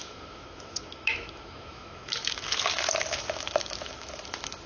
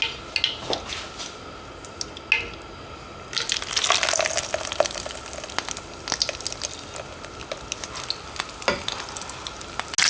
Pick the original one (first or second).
second